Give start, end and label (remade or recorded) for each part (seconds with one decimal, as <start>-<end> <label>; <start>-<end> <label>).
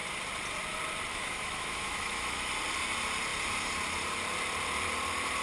0.0-1.1 recorded; 1.1-2.5 remade; 2.5-5.4 recorded